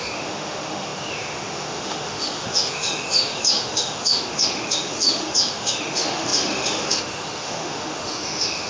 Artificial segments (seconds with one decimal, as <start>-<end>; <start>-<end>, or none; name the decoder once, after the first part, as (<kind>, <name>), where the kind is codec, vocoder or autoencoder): 0.0-8.7 (autoencoder, DAC-VAE)